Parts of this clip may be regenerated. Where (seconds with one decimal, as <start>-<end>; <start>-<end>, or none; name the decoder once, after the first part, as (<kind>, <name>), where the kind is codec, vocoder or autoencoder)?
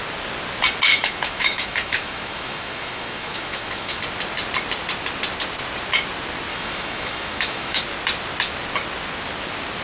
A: 0.9-4.0 (autoencoder, DAC-VAE); 6.5-7.8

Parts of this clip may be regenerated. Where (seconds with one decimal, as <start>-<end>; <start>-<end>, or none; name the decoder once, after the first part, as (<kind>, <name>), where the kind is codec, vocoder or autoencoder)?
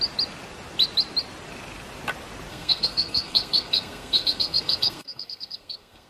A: 2.5-6.1 (codec, SNAC)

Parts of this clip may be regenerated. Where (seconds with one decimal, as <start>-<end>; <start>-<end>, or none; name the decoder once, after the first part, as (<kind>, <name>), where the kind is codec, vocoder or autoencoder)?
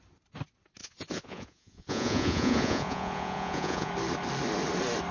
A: 0.8-3.9 (vocoder, Vocos)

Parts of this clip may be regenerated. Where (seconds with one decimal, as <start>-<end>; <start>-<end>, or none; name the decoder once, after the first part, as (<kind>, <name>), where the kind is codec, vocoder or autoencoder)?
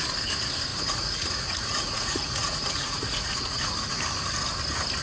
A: 0.7-3.7 (vocoder, Vocos)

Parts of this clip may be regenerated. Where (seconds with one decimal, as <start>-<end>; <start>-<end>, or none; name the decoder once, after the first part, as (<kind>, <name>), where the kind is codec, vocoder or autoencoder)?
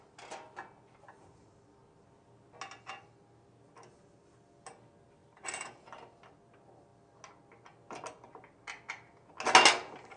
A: 5.2-5.9 (vocoder, BigVGAN v2)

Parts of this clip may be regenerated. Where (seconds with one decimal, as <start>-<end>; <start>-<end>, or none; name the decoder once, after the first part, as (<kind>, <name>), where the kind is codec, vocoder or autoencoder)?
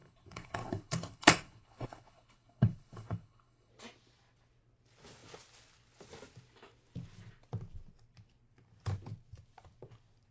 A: 0.0-3.7 (codec, HILCodec)